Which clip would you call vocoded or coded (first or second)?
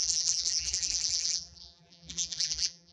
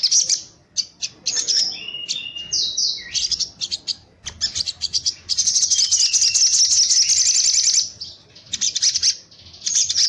first